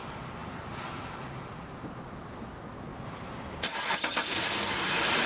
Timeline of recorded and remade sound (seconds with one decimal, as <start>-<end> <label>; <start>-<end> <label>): 0.0-5.3 recorded